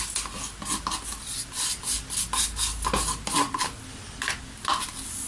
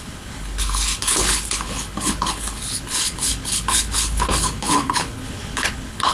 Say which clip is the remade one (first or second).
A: second